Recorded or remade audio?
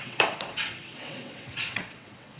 remade